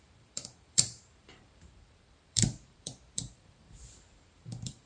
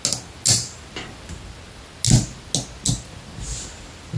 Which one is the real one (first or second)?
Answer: second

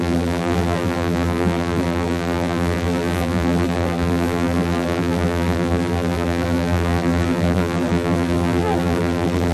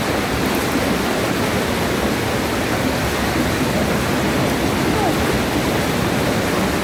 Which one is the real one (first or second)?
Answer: second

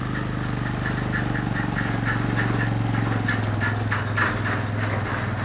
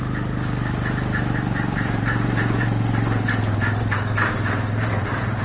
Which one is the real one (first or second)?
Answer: first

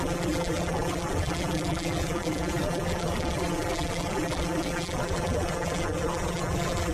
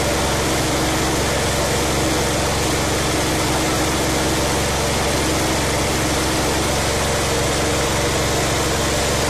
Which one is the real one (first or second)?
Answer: second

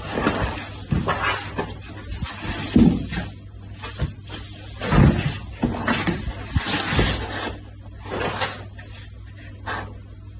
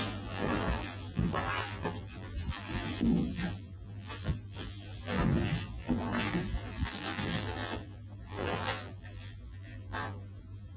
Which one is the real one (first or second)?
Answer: first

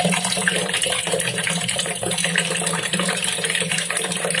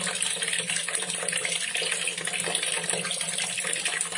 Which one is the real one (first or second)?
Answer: second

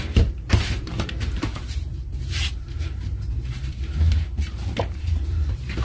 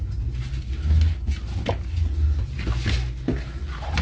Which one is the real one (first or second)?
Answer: second